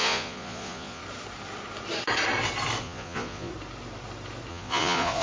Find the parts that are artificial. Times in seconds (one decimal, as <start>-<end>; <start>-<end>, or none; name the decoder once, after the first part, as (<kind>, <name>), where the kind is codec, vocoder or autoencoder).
0.0-1.0 (vocoder, Vocos); 2.8-3.5; 4.5-5.2